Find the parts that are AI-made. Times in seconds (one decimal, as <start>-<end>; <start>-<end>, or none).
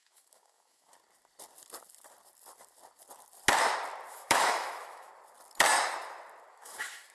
0.0-0.9; 4.1-5.1; 6.5-7.1